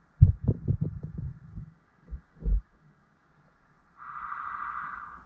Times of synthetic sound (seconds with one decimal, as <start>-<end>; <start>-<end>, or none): 1.5-3.3

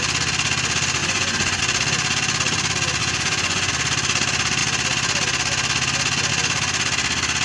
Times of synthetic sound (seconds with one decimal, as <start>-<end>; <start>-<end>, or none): 1.0-1.6; 3.0-3.7